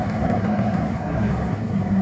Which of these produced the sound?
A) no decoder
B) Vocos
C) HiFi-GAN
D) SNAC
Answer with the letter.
D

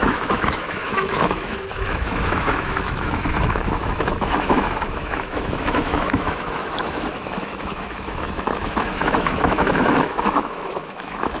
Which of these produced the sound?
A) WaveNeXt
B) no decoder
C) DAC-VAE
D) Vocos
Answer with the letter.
C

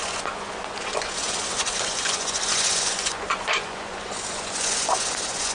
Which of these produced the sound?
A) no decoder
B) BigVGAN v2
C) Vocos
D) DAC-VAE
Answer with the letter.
C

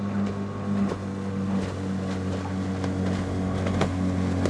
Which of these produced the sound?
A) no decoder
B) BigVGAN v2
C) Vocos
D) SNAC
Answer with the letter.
A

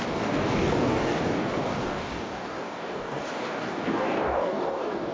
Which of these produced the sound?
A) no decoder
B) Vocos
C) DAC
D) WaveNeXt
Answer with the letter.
C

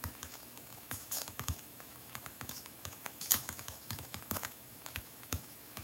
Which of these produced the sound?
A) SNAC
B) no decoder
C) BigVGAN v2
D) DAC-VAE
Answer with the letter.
D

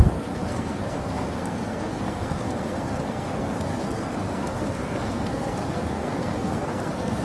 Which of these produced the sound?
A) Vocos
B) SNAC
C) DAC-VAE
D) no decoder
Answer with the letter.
B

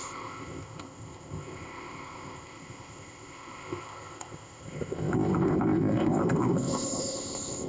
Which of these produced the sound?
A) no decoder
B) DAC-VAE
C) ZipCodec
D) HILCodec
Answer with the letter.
C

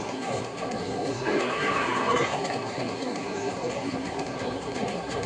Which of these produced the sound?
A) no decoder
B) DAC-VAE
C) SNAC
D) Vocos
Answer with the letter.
C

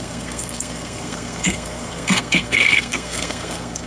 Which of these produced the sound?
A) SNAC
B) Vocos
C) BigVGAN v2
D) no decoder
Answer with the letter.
A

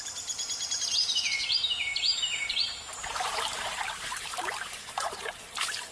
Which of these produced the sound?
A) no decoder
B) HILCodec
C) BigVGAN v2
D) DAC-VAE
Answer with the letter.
C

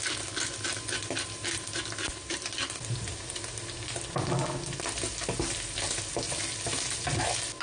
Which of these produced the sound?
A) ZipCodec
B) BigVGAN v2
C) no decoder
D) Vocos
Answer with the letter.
C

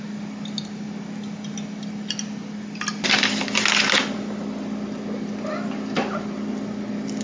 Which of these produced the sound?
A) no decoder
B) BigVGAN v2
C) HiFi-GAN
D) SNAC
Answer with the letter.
A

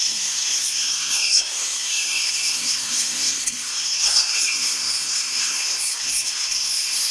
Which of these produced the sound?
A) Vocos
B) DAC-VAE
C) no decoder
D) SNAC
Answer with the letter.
D